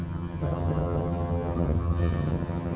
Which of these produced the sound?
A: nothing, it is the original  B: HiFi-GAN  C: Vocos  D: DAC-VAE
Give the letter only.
B